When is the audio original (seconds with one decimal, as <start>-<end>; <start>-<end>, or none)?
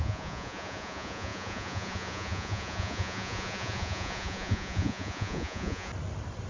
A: 5.9-6.5